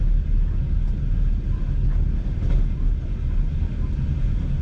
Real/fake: real